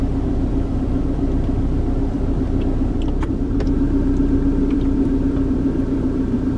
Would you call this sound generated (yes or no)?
yes